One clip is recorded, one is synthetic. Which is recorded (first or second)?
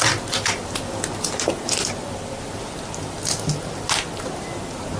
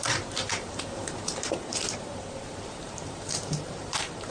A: first